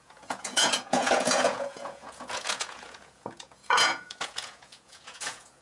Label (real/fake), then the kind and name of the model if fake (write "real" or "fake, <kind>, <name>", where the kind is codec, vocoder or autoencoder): fake, vocoder, Vocos